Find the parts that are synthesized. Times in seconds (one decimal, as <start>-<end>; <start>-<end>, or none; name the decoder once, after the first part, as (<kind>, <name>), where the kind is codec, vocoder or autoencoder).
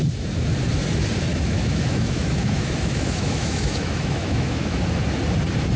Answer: 1.3-4.8 (autoencoder, DAC-VAE)